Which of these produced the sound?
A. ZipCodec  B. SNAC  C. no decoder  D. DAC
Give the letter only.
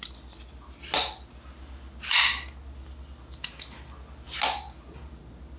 C